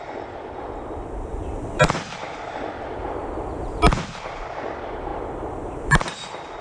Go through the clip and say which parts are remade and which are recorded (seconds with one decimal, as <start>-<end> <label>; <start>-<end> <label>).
0.0-3.2 remade; 3.2-4.6 recorded; 4.6-6.6 remade